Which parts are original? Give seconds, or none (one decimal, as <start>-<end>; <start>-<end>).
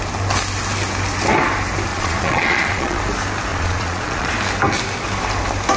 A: 0.0-1.9; 3.0-3.5; 4.3-5.8